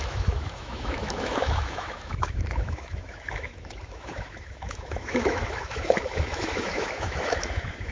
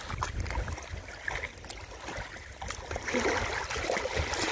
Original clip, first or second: second